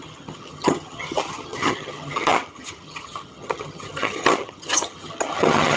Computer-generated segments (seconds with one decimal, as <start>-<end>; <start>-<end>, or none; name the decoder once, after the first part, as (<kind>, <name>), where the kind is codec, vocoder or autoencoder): 0.0-5.8 (vocoder, HiFi-GAN)